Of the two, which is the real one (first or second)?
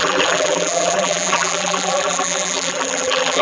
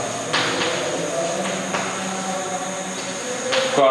second